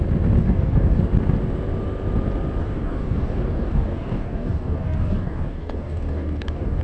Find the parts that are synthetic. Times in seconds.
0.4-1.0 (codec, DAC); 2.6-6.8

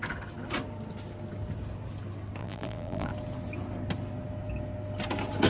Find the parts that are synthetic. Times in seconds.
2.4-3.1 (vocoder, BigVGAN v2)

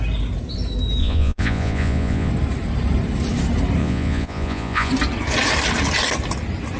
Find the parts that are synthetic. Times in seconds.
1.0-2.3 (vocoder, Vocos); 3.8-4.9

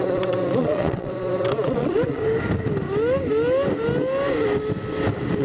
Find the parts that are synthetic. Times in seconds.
0.0-2.2 (vocoder, WaveNeXt)

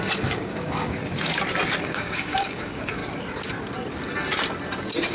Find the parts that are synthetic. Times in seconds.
0.0-1.0 (codec, DAC); 1.8-3.0